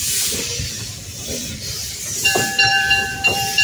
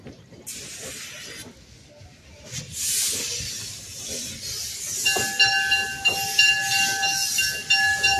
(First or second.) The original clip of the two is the second